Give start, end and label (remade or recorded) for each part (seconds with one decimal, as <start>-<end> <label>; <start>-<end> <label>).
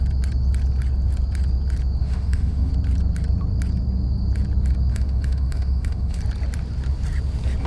0.0-2.0 recorded; 2.0-2.7 remade; 2.7-4.9 recorded; 4.9-6.2 remade; 6.2-7.7 recorded